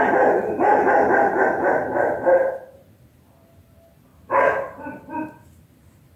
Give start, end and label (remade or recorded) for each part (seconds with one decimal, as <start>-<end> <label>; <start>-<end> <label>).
0.0-4.1 remade; 4.1-5.6 recorded; 5.6-6.2 remade